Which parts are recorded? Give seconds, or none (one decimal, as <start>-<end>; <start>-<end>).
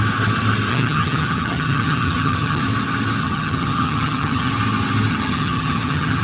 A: 0.0-0.7; 2.6-3.2; 4.5-5.1